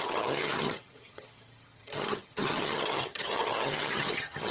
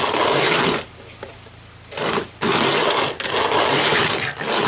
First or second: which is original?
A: second